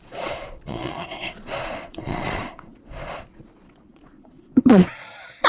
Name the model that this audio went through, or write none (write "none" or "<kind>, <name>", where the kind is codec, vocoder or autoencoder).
vocoder, Vocos